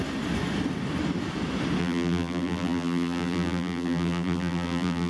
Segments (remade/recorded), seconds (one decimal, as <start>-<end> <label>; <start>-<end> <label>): 0.0-1.8 recorded; 1.8-5.1 remade